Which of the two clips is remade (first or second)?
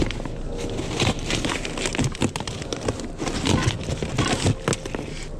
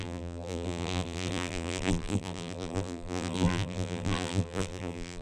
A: second